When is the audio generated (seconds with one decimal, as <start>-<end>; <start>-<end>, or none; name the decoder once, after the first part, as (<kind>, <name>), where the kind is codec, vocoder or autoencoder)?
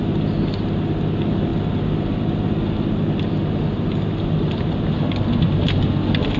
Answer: none